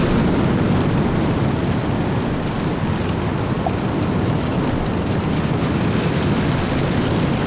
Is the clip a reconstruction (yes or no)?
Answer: no